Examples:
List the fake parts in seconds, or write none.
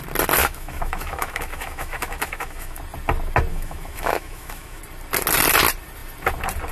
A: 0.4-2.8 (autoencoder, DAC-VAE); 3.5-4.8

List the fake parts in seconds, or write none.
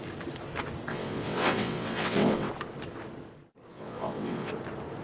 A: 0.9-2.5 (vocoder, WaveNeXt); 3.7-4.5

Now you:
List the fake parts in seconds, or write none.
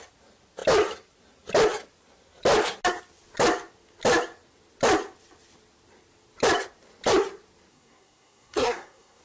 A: 7.7-9.2 (codec, SNAC)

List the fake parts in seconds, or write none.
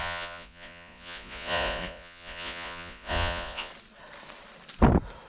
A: 0.0-3.7 (vocoder, Vocos)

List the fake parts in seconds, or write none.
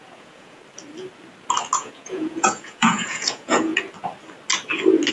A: 0.0-0.6 (vocoder, Vocos); 1.8-3.7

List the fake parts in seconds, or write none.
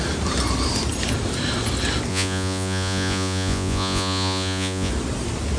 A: 2.1-4.9 (vocoder, Vocos)